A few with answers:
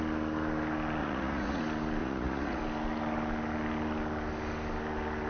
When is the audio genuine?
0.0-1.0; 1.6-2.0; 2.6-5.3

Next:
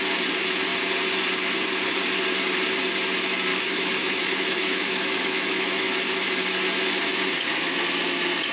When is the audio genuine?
0.0-3.5; 6.0-8.5

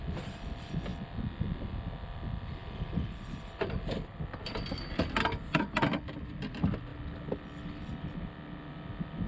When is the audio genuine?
0.0-9.3

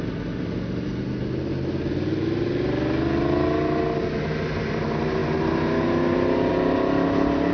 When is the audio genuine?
0.0-7.5